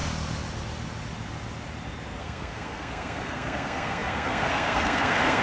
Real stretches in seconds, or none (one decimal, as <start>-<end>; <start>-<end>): 0.0-2.2